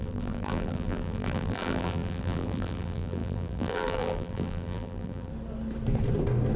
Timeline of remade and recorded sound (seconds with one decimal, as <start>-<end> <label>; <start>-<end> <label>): 0.0-5.3 remade; 5.3-6.6 recorded